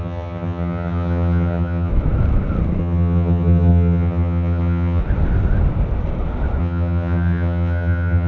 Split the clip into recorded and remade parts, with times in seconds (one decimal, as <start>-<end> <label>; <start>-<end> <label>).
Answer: 0.0-1.9 remade; 1.9-2.8 recorded; 2.8-5.0 remade; 5.0-6.6 recorded; 6.6-8.3 remade